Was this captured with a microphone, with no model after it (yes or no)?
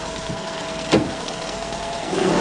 no